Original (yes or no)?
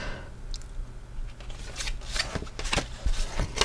yes